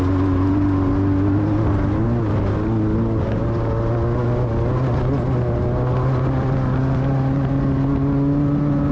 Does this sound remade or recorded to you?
recorded